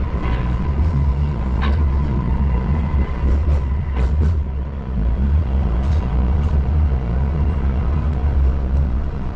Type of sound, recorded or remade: remade